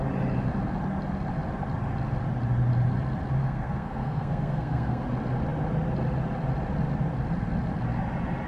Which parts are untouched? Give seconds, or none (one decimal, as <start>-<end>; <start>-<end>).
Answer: 0.0-3.4; 5.0-8.5